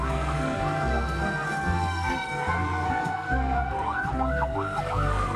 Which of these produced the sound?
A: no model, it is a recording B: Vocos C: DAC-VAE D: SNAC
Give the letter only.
D